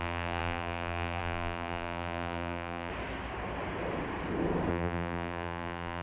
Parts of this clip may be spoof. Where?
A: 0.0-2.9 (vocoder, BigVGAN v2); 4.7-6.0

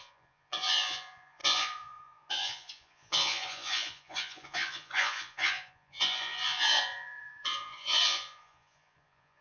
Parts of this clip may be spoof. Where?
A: 0.0-9.4 (vocoder, Vocos)

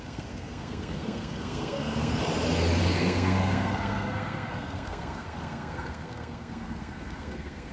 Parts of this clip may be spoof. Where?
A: 0.0-2.2 (codec, SNAC); 2.8-7.7

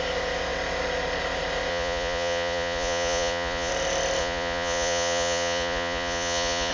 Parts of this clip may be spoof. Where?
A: 1.7-3.7 (vocoder, Vocos); 4.2-6.7

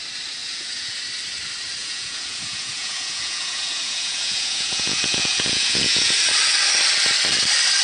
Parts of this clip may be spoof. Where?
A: 0.4-1.0 (vocoder, Vocos); 1.8-6.2

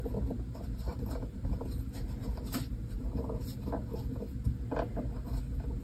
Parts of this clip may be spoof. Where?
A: 0.9-3.1 (vocoder, BigVGAN v2)